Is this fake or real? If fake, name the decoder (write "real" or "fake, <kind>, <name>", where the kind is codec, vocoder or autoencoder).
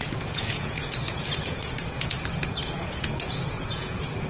fake, vocoder, Vocos